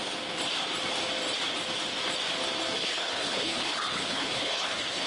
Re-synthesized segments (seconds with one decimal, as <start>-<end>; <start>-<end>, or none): 2.8-5.1